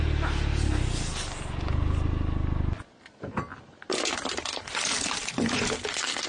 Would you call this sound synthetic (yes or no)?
no